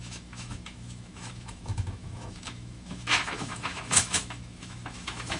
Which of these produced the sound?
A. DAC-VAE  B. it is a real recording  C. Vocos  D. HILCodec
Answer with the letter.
A